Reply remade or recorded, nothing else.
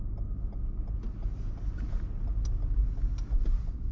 recorded